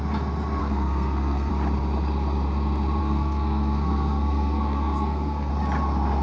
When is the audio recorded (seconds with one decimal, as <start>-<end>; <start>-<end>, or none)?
0.0-0.6; 1.5-3.0; 5.5-6.2